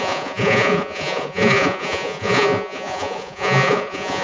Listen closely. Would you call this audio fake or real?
fake